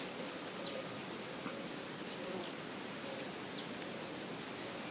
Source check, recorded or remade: recorded